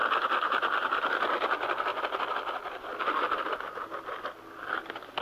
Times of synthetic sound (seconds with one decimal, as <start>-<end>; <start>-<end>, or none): none